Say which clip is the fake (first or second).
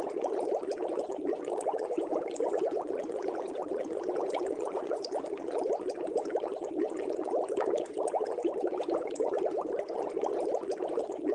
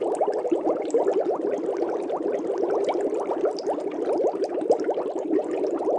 first